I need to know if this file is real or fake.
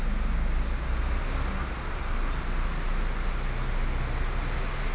real